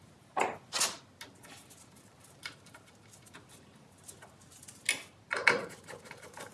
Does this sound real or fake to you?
real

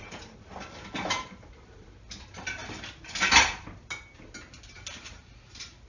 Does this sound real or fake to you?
real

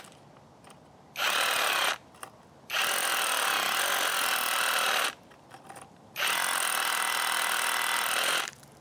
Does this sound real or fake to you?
real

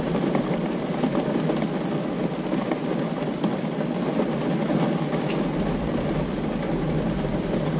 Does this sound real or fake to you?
real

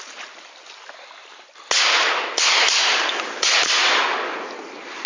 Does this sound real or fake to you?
real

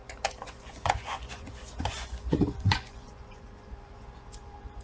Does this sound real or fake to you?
fake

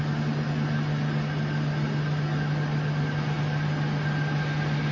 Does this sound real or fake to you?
real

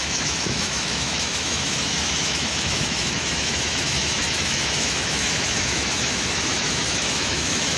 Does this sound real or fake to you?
fake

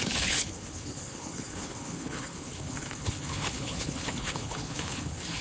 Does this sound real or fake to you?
fake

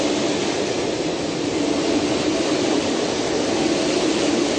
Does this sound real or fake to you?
real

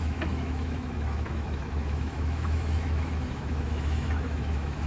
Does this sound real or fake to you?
fake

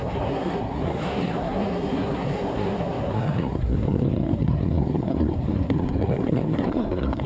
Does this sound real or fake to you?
fake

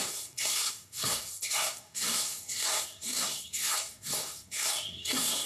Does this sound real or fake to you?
fake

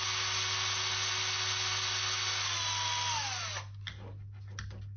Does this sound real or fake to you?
real